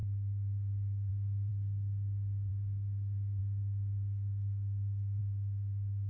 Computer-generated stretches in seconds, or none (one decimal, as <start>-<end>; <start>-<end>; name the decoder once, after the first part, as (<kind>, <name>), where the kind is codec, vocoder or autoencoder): 0.0-1.5 (codec, DAC); 2.5-6.1